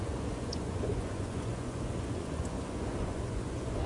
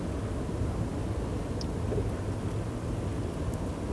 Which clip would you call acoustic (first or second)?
second